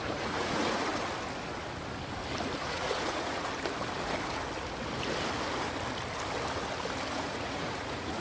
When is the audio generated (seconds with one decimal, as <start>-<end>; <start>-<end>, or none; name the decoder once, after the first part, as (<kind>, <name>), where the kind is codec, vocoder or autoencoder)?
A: 0.0-0.9 (vocoder, Vocos); 2.6-3.5; 7.1-8.2